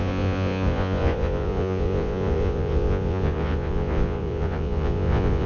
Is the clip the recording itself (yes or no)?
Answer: no